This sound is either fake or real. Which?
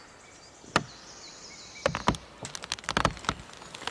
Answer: real